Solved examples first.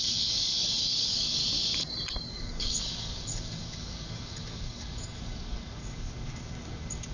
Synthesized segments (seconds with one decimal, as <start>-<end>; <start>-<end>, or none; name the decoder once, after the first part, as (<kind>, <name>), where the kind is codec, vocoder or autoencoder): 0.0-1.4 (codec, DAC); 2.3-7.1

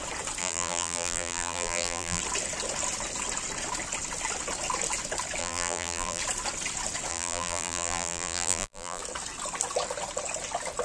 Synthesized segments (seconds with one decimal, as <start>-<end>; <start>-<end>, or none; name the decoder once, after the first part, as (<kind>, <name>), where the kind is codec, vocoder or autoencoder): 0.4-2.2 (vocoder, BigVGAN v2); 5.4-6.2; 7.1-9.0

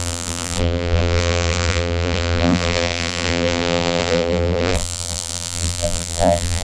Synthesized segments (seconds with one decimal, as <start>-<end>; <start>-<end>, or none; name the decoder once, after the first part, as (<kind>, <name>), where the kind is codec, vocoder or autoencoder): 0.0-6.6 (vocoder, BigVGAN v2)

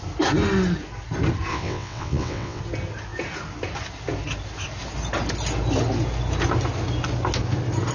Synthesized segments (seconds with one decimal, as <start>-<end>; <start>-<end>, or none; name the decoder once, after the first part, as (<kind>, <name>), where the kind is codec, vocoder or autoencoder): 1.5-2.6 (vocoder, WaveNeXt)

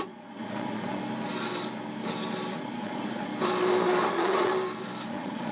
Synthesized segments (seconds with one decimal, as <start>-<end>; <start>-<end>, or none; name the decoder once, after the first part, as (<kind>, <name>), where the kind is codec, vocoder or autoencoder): 0.0-1.0 (vocoder, Vocos); 2.5-3.3; 4.1-4.5; 5.1-5.5

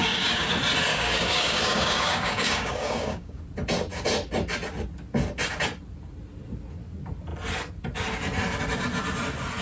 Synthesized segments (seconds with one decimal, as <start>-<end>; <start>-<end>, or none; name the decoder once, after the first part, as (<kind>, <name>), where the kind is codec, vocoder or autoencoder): 0.0-0.5 (codec, DAC); 0.9-3.4